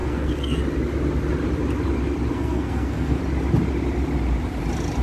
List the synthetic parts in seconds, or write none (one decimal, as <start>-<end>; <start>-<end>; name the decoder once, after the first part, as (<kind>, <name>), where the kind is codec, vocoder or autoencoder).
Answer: 0.0-0.6 (codec, SNAC); 2.3-3.2